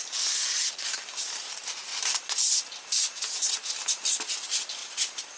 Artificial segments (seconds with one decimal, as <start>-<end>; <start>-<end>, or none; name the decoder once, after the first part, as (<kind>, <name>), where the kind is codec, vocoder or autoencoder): 4.8-5.4 (vocoder, BigVGAN v2)